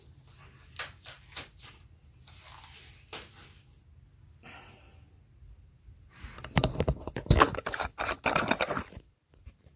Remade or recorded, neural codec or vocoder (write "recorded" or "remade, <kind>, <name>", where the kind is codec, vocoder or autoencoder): recorded